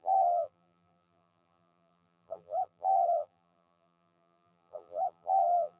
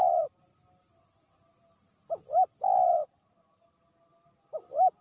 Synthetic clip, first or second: first